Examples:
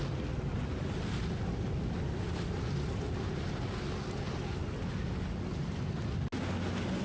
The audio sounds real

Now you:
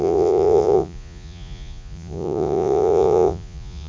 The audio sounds fake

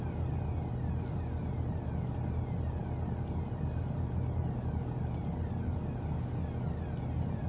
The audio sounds real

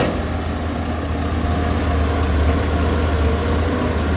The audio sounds real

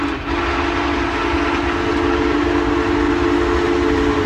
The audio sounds real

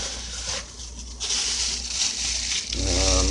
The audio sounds real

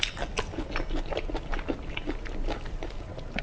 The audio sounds real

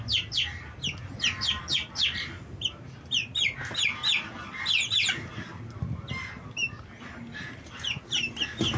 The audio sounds real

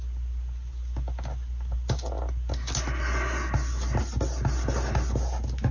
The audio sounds real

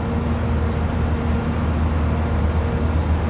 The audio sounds real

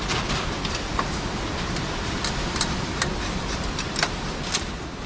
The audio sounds real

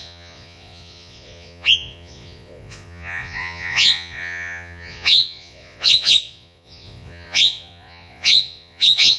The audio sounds fake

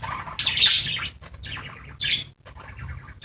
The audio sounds real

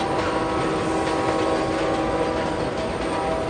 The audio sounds real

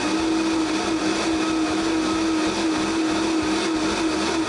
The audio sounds real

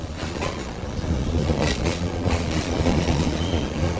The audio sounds fake